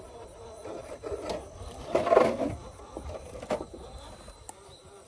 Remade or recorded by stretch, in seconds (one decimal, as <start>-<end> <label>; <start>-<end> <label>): 0.0-5.1 recorded